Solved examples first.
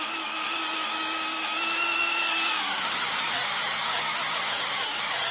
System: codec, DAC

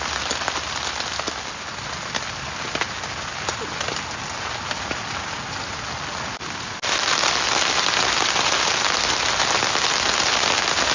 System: none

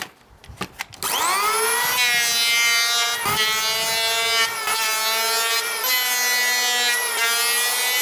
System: none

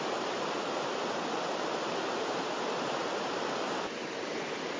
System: none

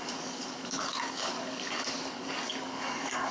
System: codec, DAC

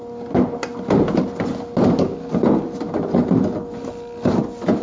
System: none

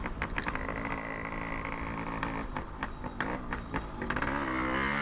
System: none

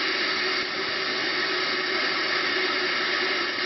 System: none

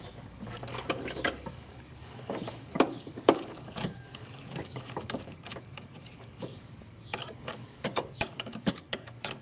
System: codec, DAC